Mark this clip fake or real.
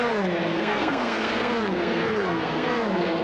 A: fake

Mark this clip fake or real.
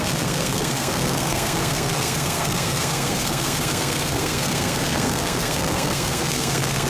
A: fake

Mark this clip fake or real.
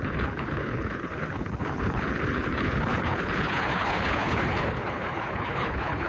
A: fake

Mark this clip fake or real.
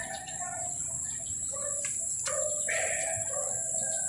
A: real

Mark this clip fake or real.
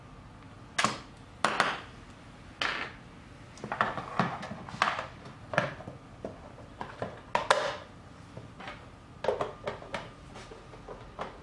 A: real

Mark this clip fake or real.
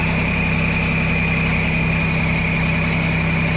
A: real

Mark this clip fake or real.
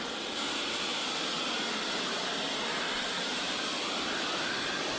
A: real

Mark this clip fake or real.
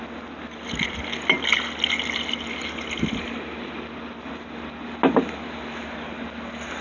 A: real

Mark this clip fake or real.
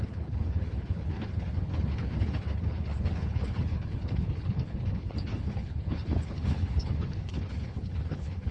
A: fake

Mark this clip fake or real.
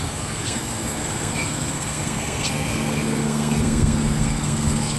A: fake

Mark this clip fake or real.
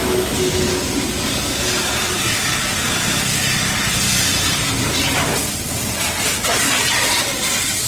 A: real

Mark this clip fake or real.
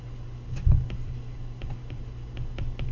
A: real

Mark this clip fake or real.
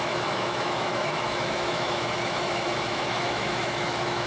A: fake